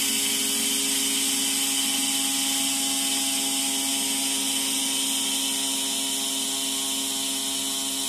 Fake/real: real